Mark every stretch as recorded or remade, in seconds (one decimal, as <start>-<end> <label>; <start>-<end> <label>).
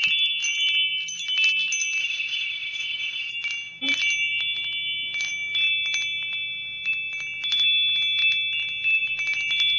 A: 0.0-2.0 recorded; 2.0-3.3 remade; 3.3-9.8 recorded